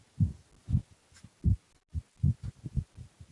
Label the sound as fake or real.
real